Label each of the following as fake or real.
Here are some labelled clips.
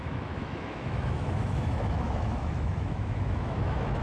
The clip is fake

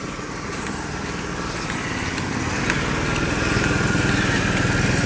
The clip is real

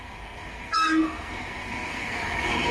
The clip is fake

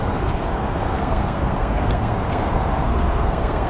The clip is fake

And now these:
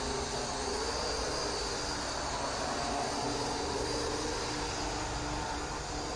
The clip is real